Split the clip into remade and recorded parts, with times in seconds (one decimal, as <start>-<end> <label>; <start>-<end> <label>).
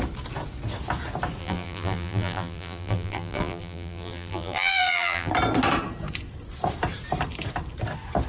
0.0-1.4 recorded; 1.4-5.3 remade; 5.3-8.3 recorded